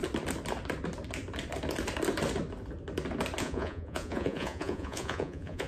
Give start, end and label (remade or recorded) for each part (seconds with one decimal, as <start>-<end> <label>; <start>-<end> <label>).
0.0-3.4 recorded; 3.4-5.7 remade